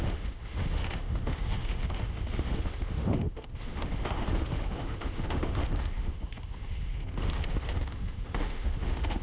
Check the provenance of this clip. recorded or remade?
remade